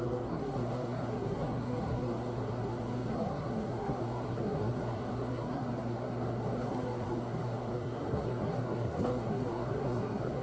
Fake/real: fake